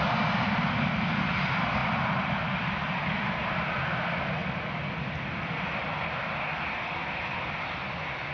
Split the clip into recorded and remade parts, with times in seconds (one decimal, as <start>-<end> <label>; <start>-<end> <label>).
0.0-8.3 recorded